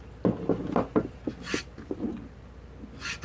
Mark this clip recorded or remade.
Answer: recorded